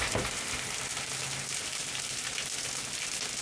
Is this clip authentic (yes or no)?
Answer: yes